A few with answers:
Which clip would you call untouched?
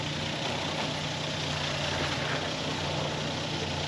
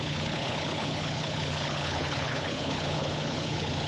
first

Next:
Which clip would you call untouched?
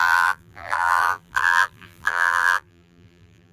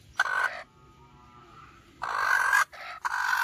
second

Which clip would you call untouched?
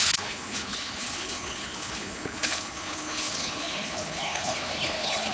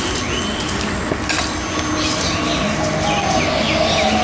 second